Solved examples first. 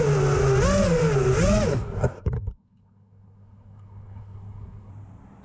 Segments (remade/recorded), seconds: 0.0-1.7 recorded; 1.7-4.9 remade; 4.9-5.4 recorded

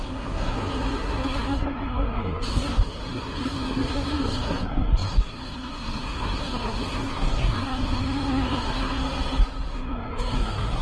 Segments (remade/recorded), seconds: 0.0-9.0 remade; 9.0-9.7 recorded; 9.7-10.8 remade

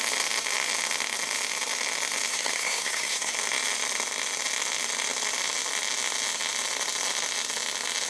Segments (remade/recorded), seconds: 0.0-2.3 recorded; 2.3-3.3 remade; 3.3-8.1 recorded

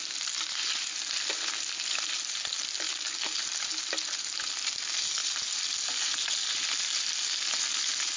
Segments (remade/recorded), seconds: 0.0-8.2 recorded

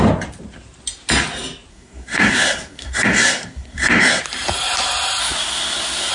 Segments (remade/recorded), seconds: 0.0-1.7 recorded; 1.7-4.2 remade; 4.2-5.2 recorded; 5.2-6.1 remade